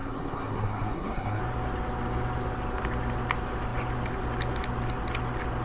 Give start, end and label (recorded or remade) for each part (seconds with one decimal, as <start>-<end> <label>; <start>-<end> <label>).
0.0-1.4 remade; 1.4-5.6 recorded